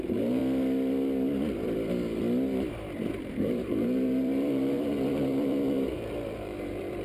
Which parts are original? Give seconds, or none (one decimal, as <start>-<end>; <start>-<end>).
0.4-3.2